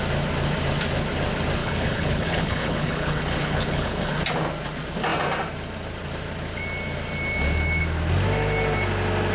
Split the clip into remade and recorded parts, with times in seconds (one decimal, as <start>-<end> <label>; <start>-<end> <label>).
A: 0.0-1.6 recorded; 1.6-4.2 remade; 4.2-9.3 recorded